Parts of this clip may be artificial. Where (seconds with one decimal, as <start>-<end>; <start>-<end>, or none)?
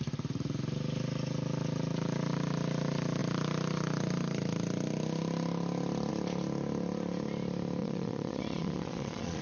7.8-9.4